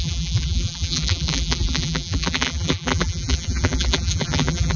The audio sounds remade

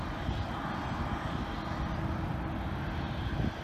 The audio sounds recorded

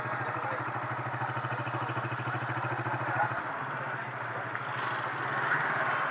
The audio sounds recorded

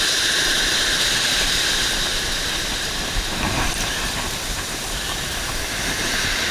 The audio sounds remade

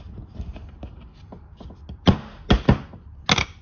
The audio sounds recorded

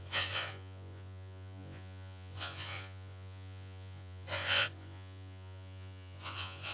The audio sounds remade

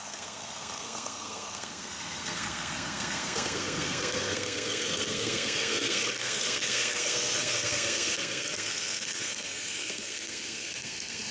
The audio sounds remade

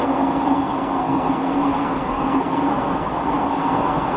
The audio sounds remade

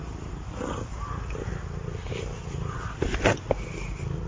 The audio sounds recorded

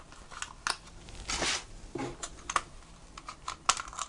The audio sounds recorded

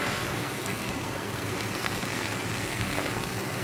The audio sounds remade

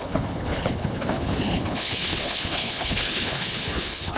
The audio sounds remade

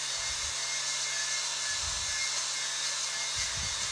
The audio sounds recorded